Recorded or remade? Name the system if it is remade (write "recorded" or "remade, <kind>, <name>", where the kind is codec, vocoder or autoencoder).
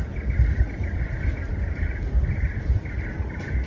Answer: recorded